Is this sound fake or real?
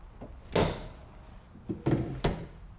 real